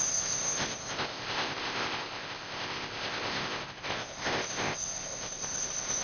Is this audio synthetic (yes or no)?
yes